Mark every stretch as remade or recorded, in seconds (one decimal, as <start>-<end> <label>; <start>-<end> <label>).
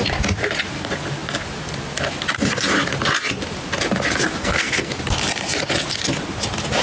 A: 0.0-4.4 recorded; 4.4-4.9 remade; 4.9-6.8 recorded